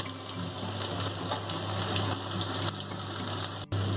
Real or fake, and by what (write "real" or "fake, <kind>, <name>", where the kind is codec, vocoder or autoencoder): real